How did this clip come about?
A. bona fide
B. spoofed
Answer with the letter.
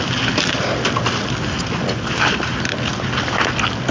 A